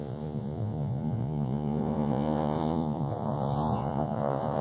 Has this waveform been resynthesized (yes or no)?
yes